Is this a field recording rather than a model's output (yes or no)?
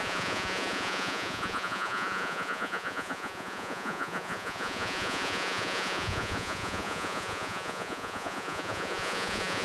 no